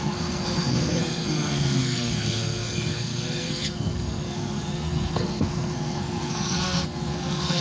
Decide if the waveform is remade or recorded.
remade